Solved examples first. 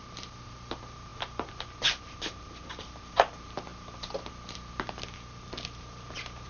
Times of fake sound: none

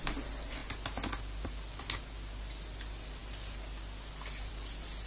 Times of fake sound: none

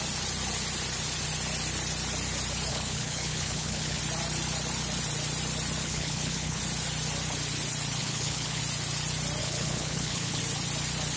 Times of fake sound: 2.7-4.0 (codec, HILCodec); 5.8-6.6; 8.0-8.6; 9.4-10.4

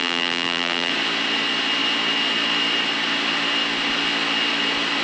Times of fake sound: 0.0-0.9 (vocoder, BigVGAN v2)

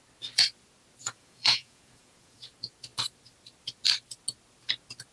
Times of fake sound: 1.0-2.5 (vocoder, Vocos)